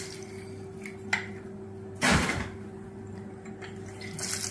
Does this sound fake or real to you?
real